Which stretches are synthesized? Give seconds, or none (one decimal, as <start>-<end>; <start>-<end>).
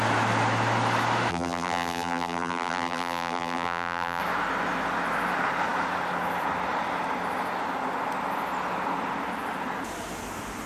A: 1.3-4.2